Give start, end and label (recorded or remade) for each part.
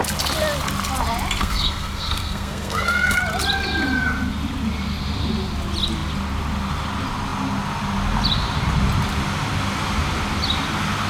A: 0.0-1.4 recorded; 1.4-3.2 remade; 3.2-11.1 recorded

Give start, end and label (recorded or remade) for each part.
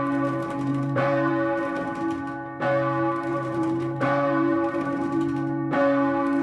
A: 0.0-0.7 recorded; 0.7-1.3 remade; 1.3-3.3 recorded; 3.3-5.8 remade; 5.8-6.4 recorded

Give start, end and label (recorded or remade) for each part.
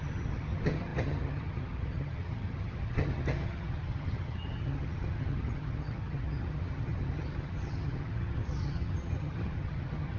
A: 0.0-10.2 remade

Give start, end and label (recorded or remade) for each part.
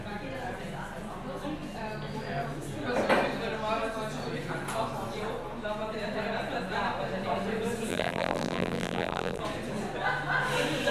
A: 0.0-7.9 recorded; 7.9-9.4 remade; 9.4-10.9 recorded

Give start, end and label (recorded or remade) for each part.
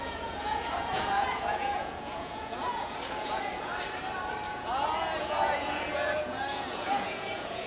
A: 0.0-3.7 remade; 3.7-4.5 recorded; 4.5-7.7 remade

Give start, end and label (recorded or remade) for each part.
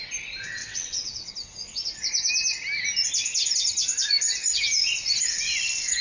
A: 0.0-0.6 recorded; 0.6-1.3 remade; 1.3-6.0 recorded